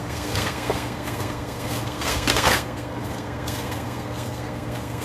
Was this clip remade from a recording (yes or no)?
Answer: yes